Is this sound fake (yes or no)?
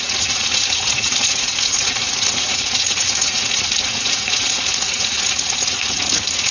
yes